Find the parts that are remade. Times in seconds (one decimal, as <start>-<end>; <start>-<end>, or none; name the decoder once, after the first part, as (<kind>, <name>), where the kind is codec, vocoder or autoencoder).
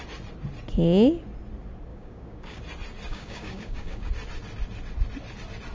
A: 1.9-2.6 (codec, DAC); 3.1-4.1